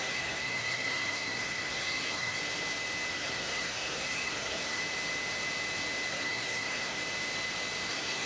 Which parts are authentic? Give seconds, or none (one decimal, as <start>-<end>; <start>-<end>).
2.4-3.1; 4.8-6.1; 7.0-7.9